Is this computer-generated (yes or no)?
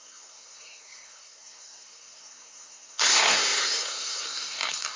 yes